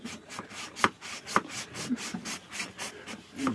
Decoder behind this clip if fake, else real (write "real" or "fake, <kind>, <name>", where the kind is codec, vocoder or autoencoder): real